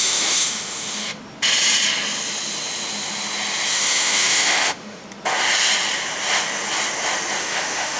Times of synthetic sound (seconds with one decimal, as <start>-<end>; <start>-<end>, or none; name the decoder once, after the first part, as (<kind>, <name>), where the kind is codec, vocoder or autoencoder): 0.0-1.2 (autoencoder, DAC-VAE); 3.7-5.0; 7.4-8.0